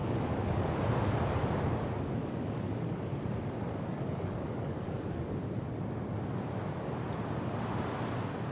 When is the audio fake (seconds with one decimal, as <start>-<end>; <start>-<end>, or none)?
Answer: 0.0-0.8; 2.2-5.2

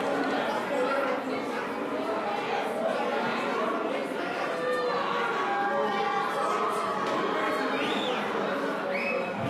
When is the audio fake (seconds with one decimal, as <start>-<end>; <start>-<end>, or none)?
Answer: none

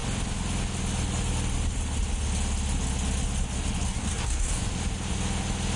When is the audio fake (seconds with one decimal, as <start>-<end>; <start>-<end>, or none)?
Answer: 3.9-4.6

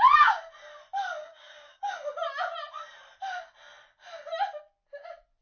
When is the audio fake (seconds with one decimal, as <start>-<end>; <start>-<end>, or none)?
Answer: 1.2-1.9

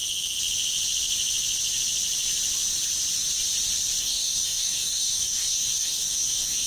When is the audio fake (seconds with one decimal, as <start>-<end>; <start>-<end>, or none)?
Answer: 4.0-6.7